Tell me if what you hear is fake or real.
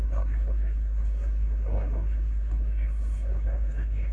fake